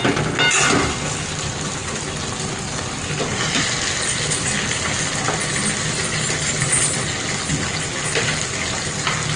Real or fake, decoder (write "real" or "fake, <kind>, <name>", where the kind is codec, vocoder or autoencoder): real